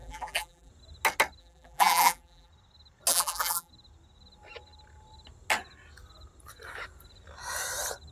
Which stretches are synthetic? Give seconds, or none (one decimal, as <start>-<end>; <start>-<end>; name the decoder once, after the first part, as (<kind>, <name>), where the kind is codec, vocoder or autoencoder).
0.0-0.7 (vocoder, BigVGAN v2); 1.4-2.5; 3.1-3.7